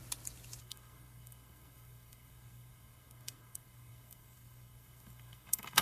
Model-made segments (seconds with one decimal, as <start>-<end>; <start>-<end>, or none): 0.6-5.8